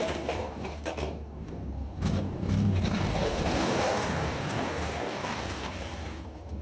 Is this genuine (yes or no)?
no